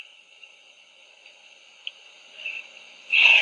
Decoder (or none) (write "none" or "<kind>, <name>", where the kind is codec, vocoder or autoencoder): none